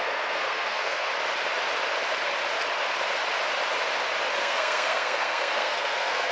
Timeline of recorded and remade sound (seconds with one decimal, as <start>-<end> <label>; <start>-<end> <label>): 0.0-1.1 remade; 1.1-4.4 recorded; 4.4-6.3 remade